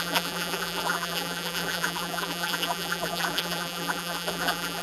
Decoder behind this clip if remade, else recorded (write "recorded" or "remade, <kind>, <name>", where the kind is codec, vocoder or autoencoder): remade, vocoder, BigVGAN v2